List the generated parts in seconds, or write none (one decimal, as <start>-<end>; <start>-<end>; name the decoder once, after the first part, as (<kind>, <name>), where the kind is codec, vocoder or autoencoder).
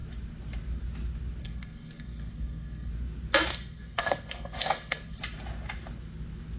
1.4-2.9 (codec, SNAC); 3.5-5.2